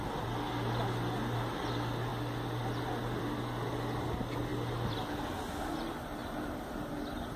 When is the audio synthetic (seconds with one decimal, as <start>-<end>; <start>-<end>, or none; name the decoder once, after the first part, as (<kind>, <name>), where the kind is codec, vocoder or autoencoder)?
6.2-6.9 (vocoder, BigVGAN v2)